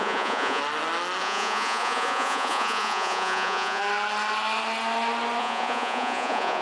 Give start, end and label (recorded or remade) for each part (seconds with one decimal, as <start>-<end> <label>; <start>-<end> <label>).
0.0-0.6 remade; 0.6-1.2 recorded; 1.2-3.8 remade; 3.8-5.4 recorded; 5.4-6.6 remade